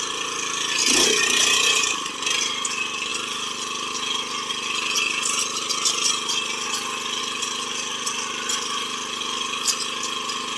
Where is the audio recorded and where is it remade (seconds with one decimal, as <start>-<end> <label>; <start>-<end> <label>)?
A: 0.0-10.6 recorded